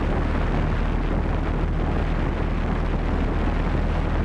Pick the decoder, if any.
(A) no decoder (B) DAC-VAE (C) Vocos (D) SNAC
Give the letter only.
A